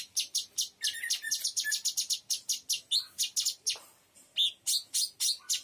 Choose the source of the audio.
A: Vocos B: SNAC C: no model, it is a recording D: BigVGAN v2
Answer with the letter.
C